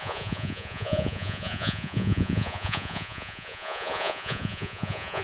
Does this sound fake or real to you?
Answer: fake